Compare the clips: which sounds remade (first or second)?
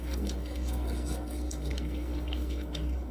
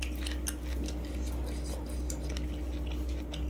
first